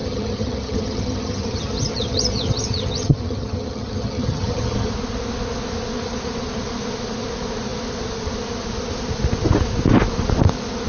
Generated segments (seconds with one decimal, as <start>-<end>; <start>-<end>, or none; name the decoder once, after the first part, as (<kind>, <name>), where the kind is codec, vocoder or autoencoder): 0.0-4.9 (vocoder, HiFi-GAN)